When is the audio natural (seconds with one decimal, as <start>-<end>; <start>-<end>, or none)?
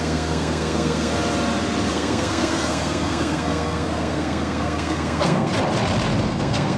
1.1-1.9; 5.5-6.3